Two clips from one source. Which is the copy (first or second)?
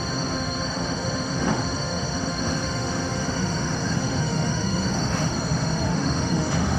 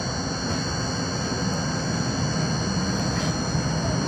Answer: first